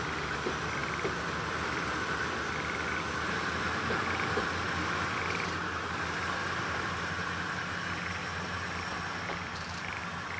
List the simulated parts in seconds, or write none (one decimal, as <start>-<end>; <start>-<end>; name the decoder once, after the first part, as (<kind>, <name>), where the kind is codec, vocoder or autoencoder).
6.4-7.1 (vocoder, BigVGAN v2); 8.2-10.0